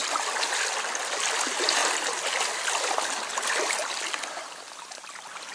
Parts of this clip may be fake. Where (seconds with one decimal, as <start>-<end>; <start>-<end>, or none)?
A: 0.0-0.6; 3.8-5.1

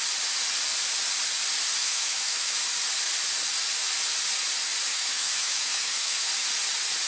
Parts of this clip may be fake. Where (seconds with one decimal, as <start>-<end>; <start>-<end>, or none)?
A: 1.8-2.6; 4.9-6.3

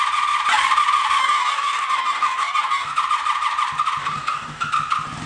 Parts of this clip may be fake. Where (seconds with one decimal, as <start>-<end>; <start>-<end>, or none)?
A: 1.2-2.9; 4.0-4.7

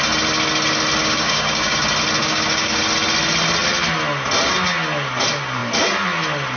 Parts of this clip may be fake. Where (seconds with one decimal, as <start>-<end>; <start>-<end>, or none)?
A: 1.0-1.8; 2.2-2.8

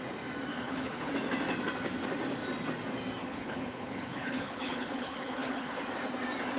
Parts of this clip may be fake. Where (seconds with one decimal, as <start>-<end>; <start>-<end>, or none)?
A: 0.5-1.1; 3.2-5.8

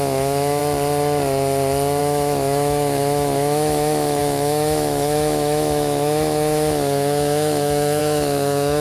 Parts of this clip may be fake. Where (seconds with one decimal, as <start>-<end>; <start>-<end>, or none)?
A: 0.0-0.6; 2.0-8.8

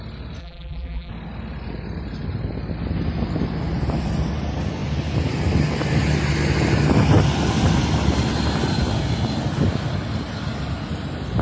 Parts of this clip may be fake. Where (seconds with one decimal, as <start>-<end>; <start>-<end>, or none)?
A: 0.4-1.1